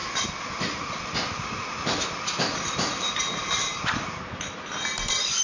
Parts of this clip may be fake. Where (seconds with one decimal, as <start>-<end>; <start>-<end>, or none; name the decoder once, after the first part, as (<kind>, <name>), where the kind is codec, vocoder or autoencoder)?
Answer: 0.0-3.2 (vocoder, BigVGAN v2)